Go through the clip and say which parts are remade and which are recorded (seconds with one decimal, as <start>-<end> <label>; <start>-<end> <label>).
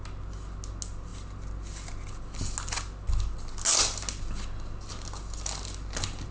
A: 0.0-6.3 recorded